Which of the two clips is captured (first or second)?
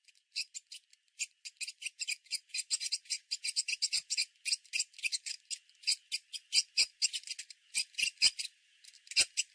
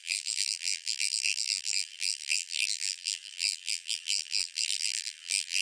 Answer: first